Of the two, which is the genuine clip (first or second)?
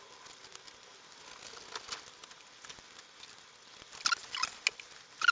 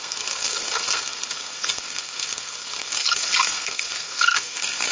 first